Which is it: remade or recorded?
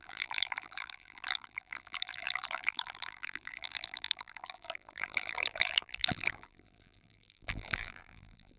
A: remade